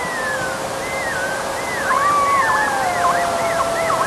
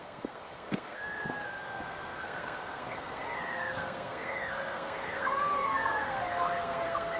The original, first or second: first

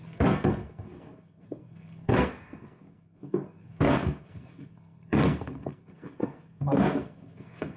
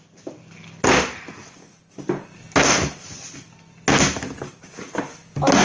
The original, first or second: second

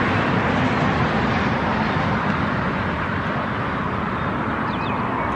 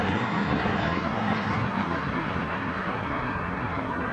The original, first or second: first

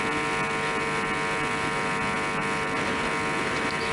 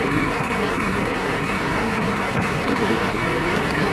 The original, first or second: first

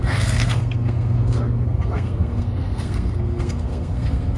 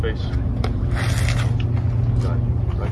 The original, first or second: second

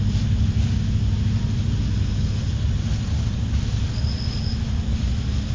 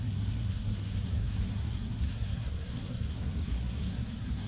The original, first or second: first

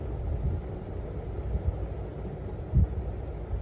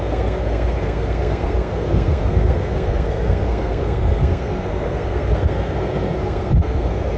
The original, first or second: first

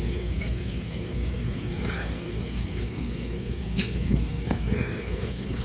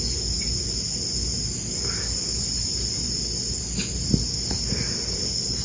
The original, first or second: second